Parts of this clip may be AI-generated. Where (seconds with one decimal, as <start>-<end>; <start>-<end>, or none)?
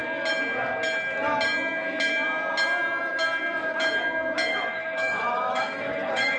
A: 4.5-6.4